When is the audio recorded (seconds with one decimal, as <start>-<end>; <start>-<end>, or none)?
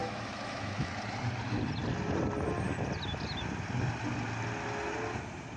0.9-5.6